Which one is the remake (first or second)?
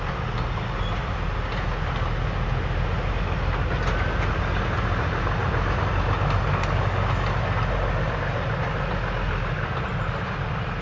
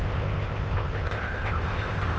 second